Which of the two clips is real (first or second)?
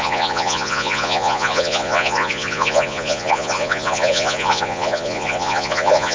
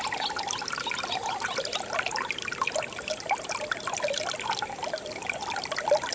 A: second